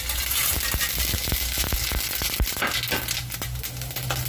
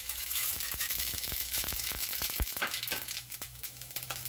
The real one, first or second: first